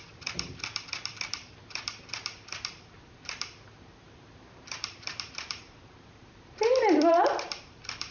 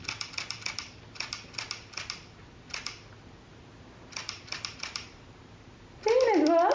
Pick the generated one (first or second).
first